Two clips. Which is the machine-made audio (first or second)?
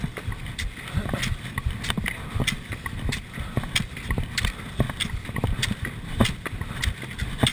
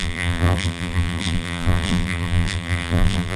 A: second